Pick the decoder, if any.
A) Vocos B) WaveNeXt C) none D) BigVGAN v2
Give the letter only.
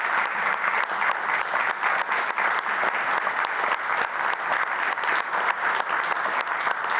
C